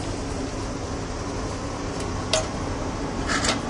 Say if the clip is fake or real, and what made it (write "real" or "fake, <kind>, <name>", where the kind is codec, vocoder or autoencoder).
real